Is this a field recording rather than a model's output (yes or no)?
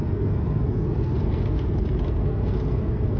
no